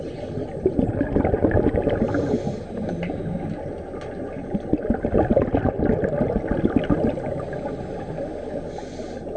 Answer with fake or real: real